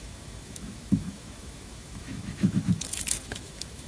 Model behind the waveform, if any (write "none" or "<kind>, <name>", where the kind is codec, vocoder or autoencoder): autoencoder, DAC-VAE